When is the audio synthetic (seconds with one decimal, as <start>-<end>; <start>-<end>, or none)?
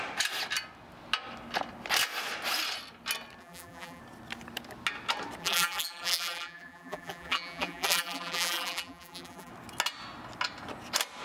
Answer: 3.4-4.0; 5.4-9.5